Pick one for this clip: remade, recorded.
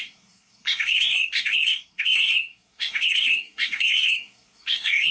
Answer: remade